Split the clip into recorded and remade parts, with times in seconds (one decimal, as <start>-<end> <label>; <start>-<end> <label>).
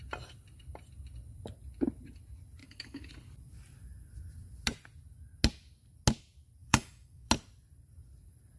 0.0-2.6 recorded; 2.6-3.1 remade; 3.1-6.6 recorded; 6.6-7.3 remade; 7.3-8.6 recorded